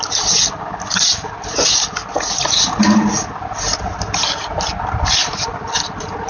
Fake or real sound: real